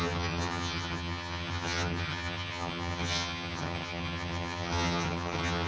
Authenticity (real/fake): fake